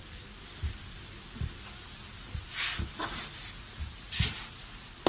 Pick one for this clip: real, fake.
real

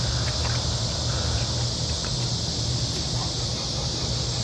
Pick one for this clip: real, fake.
real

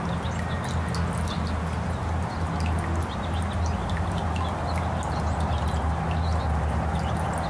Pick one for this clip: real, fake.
real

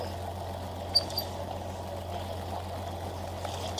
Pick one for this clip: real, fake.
real